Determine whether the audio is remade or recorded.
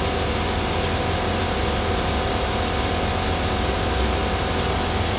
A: recorded